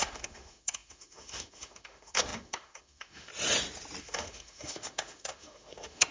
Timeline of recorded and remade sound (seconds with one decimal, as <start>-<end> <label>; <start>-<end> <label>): 0.0-3.3 remade; 3.3-4.0 recorded; 4.0-6.1 remade